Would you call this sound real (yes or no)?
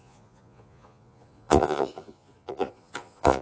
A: no